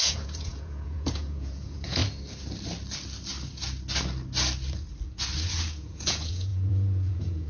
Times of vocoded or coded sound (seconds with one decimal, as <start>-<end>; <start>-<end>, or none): 0.0-2.0; 5.7-7.5